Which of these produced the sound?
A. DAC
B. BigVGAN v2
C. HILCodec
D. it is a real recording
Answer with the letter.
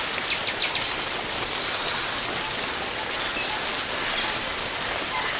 D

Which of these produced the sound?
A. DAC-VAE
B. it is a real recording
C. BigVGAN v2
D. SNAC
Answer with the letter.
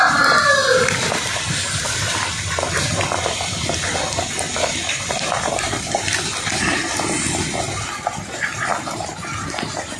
B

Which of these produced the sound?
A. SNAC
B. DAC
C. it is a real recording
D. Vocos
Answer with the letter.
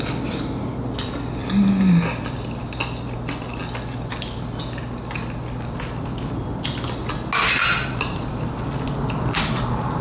C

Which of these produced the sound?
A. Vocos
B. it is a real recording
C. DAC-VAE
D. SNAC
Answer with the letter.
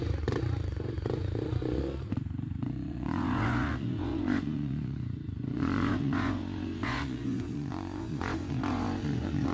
A